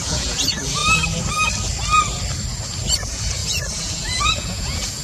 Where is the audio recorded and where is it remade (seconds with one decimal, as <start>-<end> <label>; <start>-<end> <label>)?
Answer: 0.0-0.8 remade; 0.8-3.0 recorded; 3.0-5.0 remade